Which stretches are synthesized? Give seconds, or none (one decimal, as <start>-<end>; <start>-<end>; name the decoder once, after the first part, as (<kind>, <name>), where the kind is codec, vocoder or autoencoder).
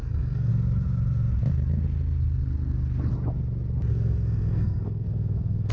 0.0-0.5 (codec, SNAC); 3.9-5.7